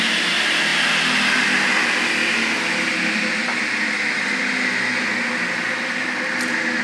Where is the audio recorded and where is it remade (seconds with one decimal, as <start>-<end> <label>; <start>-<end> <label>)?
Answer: 0.0-6.8 recorded